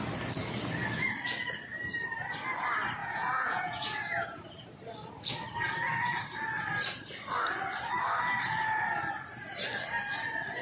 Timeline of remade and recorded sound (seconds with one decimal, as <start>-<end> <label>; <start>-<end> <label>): 0.0-3.0 recorded; 3.0-4.4 remade; 4.4-10.6 recorded